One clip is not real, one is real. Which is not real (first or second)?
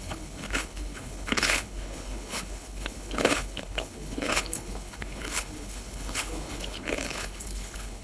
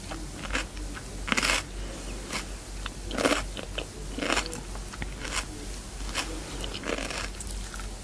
first